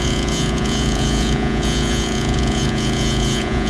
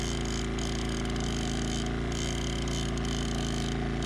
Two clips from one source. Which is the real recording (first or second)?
second